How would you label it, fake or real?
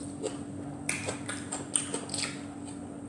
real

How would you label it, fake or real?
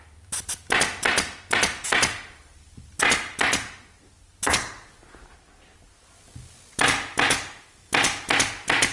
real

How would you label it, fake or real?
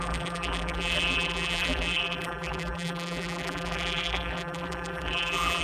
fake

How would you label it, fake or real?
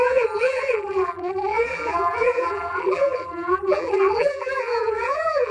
fake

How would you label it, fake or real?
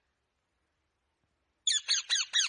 real